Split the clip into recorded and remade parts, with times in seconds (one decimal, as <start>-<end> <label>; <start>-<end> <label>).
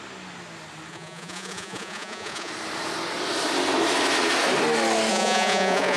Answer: 0.0-0.9 recorded; 0.9-2.5 remade; 2.5-5.1 recorded; 5.1-6.0 remade